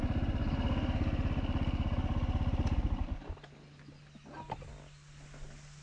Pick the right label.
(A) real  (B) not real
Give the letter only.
A